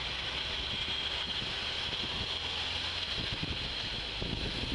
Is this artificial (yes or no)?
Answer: no